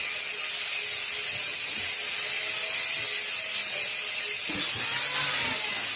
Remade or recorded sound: recorded